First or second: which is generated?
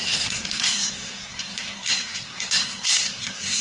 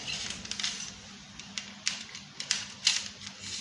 first